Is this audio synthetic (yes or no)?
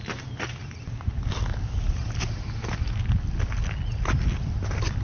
no